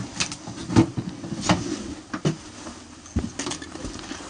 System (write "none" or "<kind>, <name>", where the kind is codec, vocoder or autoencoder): none